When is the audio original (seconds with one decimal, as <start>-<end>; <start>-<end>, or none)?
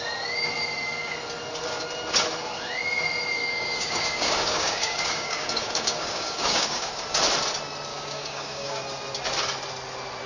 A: 0.0-3.4; 6.9-7.9; 8.8-10.3